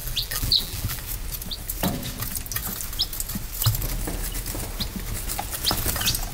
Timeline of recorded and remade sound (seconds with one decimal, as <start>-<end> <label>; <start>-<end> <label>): 0.0-1.0 remade; 1.0-6.3 recorded